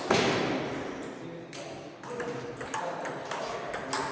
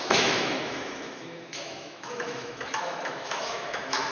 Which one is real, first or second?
first